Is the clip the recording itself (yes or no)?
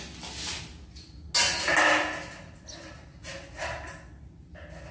yes